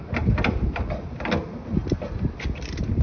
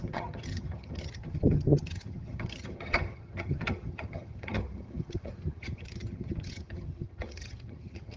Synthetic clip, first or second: second